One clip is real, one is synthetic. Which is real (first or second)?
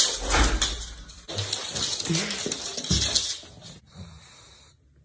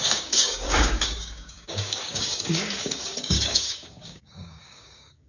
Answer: first